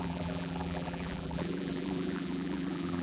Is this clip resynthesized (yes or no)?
yes